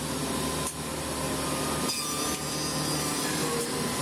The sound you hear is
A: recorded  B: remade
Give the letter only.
A